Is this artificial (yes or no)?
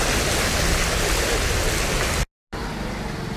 no